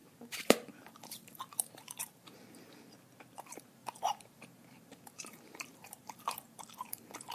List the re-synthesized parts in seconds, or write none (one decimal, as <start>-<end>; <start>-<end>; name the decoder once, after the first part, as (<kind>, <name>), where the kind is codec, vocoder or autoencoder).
0.0-2.6 (vocoder, BigVGAN v2); 3.8-7.3